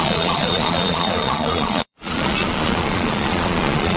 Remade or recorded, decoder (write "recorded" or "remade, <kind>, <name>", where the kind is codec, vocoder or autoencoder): remade, vocoder, Vocos